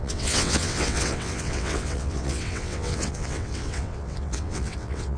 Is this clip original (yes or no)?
no